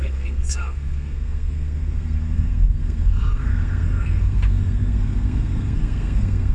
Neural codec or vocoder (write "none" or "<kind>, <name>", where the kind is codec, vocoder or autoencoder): codec, SNAC